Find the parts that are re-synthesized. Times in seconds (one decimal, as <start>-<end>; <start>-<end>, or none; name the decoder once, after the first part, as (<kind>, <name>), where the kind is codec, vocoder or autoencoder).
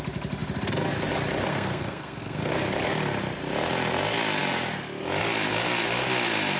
1.5-2.6 (codec, SNAC)